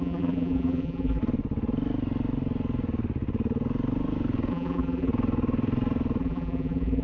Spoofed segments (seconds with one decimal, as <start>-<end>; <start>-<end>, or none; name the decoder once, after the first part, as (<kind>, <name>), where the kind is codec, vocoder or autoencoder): 0.0-1.2 (vocoder, BigVGAN v2); 4.5-5.1; 6.2-7.0